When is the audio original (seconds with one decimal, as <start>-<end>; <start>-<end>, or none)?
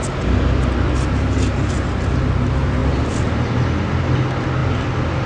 0.0-2.8; 3.9-4.6